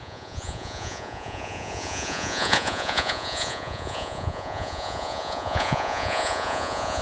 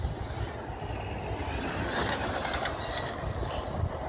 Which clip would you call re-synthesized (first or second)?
first